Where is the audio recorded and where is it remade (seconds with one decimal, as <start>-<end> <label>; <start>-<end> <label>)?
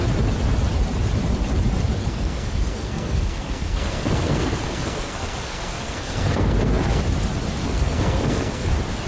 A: 0.0-2.0 recorded; 2.0-7.0 remade; 7.0-7.6 recorded; 7.6-8.7 remade; 8.7-9.1 recorded